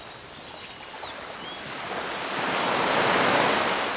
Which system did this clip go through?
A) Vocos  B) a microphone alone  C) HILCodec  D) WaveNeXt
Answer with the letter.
B